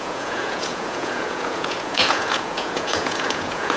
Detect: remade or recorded remade